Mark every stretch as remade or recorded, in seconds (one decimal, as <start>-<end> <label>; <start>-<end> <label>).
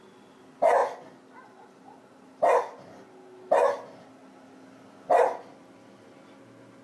0.0-6.8 recorded